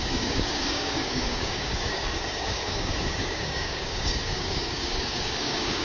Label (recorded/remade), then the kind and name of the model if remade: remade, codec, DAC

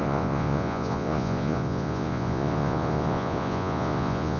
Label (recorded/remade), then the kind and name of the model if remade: remade, vocoder, Vocos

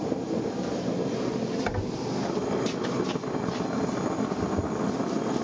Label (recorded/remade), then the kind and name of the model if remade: recorded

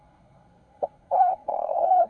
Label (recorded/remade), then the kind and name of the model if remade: remade, codec, SNAC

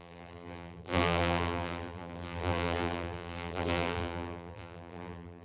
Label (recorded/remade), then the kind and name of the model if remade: remade, vocoder, BigVGAN v2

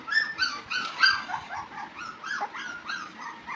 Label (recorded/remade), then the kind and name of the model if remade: recorded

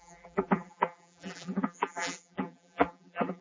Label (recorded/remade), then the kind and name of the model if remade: remade, vocoder, BigVGAN v2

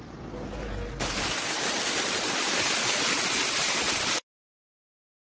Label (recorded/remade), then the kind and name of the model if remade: recorded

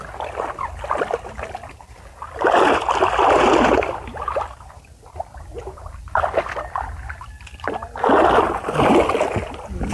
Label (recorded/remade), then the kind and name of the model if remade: recorded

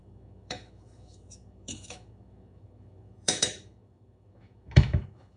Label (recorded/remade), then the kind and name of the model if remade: remade, autoencoder, DAC-VAE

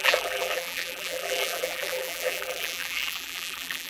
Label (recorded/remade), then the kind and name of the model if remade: remade, vocoder, BigVGAN v2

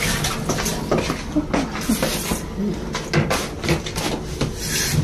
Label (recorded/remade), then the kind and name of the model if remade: recorded